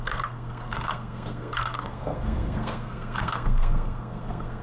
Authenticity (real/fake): fake